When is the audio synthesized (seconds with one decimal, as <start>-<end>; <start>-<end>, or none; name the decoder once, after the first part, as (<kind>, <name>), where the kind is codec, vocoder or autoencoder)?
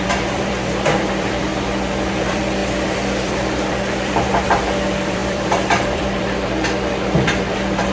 0.0-1.5 (vocoder, BigVGAN v2); 2.1-7.9